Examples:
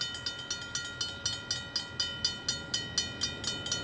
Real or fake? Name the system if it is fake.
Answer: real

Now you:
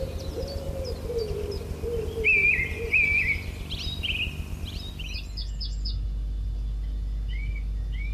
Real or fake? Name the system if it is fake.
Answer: real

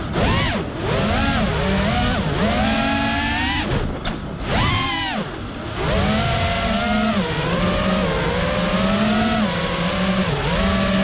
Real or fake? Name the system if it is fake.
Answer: real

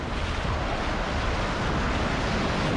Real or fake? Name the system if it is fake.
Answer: real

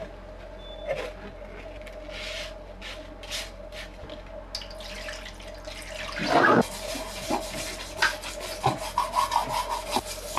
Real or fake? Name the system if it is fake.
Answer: real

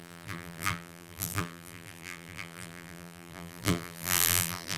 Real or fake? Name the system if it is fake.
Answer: fake, vocoder, BigVGAN v2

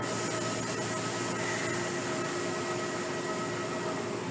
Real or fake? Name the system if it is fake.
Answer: real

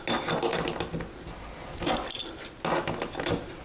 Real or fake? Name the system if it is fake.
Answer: real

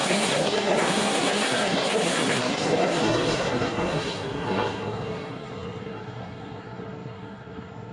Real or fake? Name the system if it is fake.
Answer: fake, codec, SNAC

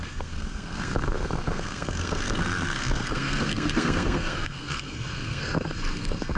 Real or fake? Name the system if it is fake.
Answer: fake, codec, SNAC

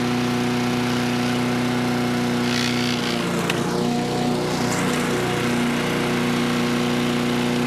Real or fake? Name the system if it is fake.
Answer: real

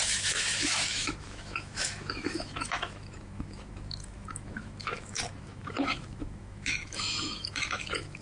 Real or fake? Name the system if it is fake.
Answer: fake, autoencoder, DAC-VAE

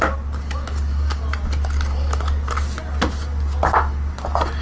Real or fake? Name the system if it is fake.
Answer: real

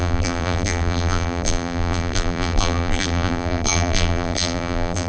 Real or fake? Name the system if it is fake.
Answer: fake, vocoder, BigVGAN v2